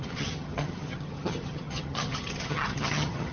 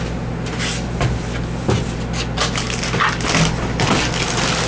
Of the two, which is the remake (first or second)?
first